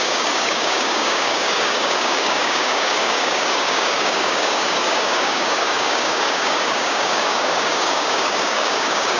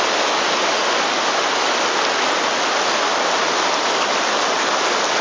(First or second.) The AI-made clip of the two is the first